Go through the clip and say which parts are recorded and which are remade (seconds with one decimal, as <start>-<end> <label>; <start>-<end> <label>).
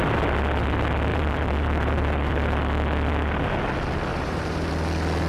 0.0-1.1 recorded; 1.1-2.3 remade; 2.3-4.1 recorded; 4.1-4.7 remade; 4.7-5.3 recorded